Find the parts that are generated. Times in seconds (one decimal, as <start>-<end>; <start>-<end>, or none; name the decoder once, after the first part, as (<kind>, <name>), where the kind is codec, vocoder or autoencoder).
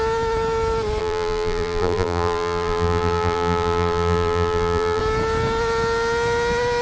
1.0-5.0 (vocoder, BigVGAN v2)